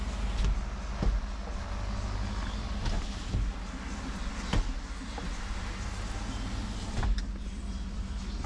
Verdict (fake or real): real